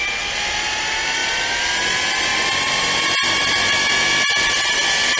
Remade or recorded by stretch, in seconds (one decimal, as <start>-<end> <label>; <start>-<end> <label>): 0.0-5.2 recorded